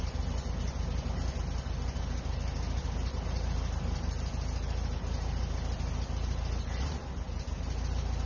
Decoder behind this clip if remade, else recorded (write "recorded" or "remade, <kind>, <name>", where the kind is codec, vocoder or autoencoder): recorded